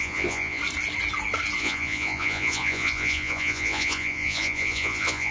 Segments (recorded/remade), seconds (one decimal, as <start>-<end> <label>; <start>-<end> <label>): 0.0-0.6 remade; 0.6-1.6 recorded; 1.6-5.3 remade